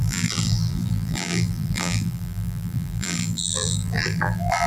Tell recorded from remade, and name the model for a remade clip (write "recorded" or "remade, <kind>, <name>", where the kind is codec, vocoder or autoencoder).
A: remade, vocoder, BigVGAN v2